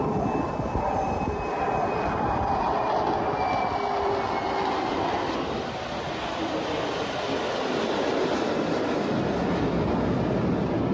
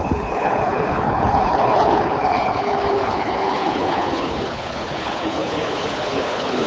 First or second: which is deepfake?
second